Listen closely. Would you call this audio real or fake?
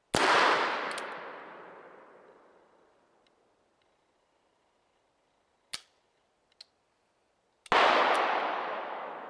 real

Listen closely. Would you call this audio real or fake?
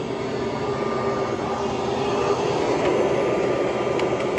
real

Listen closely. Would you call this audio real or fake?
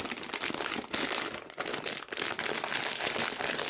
real